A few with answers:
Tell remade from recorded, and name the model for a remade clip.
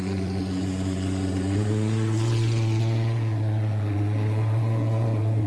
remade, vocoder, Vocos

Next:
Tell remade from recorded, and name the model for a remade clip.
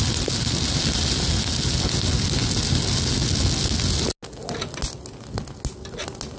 recorded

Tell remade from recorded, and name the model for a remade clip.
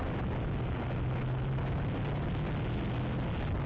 recorded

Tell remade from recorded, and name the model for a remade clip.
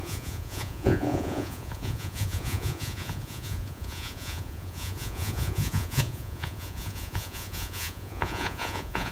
remade, vocoder, Vocos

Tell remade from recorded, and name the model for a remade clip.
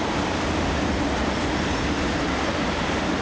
recorded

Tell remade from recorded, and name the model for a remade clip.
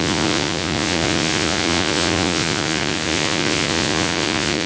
remade, vocoder, Vocos